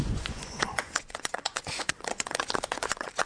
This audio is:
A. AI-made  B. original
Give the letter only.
A